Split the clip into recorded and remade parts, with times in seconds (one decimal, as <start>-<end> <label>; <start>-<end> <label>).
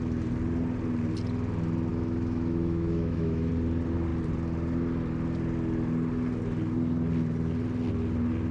0.0-1.9 recorded; 1.9-3.5 remade; 3.5-8.5 recorded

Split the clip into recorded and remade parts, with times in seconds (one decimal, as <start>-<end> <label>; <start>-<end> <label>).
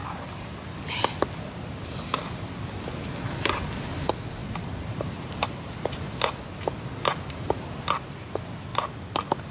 0.0-0.5 remade; 0.5-4.4 recorded; 4.4-5.8 remade; 5.8-9.5 recorded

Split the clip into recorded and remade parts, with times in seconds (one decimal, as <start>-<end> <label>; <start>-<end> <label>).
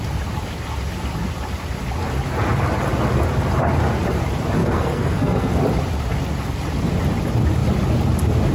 0.0-4.6 recorded; 4.6-5.5 remade; 5.5-8.5 recorded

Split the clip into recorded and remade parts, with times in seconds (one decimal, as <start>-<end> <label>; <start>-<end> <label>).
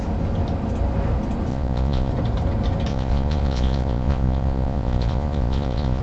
0.0-1.5 recorded; 1.5-2.1 remade; 2.1-2.9 recorded; 2.9-6.0 remade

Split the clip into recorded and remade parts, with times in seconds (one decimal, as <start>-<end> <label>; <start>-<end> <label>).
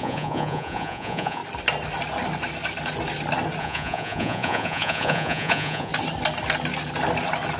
0.0-1.4 remade; 1.4-3.6 recorded; 3.6-5.9 remade; 5.9-7.6 recorded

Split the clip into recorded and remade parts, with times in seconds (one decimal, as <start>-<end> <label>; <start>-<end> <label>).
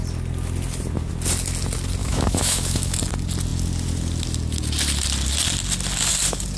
0.0-2.0 recorded; 2.0-3.0 remade; 3.0-6.6 recorded